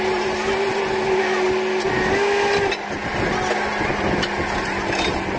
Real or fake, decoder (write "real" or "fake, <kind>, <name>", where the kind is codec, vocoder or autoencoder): real